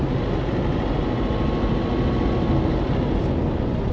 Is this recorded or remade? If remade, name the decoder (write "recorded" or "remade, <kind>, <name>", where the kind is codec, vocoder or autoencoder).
recorded